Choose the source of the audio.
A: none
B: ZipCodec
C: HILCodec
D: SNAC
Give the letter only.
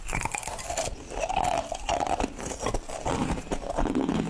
A